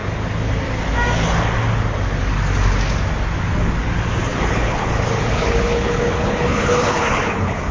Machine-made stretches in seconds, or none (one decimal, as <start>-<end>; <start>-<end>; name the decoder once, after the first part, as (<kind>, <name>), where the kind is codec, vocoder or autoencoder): 4.3-7.7 (codec, HILCodec)